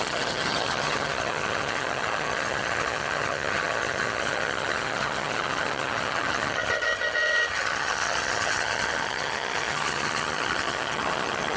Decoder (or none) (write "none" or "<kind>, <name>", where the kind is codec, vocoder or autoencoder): vocoder, HiFi-GAN